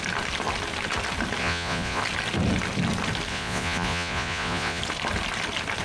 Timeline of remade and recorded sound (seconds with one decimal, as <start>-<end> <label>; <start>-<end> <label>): 0.0-1.4 recorded; 1.4-2.0 remade; 2.0-3.3 recorded; 3.3-4.8 remade; 4.8-5.8 recorded